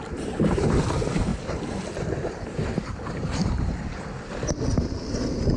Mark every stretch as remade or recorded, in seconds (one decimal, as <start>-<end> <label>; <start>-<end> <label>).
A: 0.0-1.3 recorded; 1.3-2.5 remade; 2.5-5.6 recorded